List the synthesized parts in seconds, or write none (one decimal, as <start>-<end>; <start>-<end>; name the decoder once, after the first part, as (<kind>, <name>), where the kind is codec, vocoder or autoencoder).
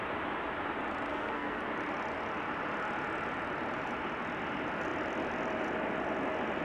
1.1-1.6 (codec, SNAC)